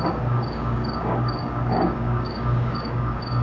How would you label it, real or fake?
fake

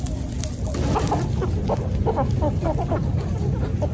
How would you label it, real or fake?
real